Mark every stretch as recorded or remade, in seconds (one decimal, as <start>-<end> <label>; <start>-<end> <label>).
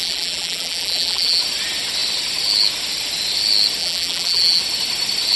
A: 0.0-1.4 remade; 1.4-3.8 recorded; 3.8-4.6 remade; 4.6-5.4 recorded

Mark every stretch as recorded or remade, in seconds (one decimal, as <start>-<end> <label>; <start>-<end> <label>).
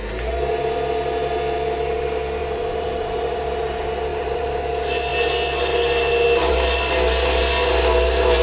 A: 0.0-2.4 recorded; 2.4-3.4 remade; 3.4-4.1 recorded; 4.1-4.6 remade; 4.6-8.4 recorded